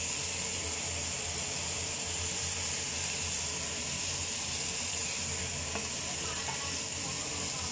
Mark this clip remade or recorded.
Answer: recorded